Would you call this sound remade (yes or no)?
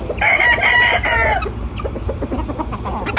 no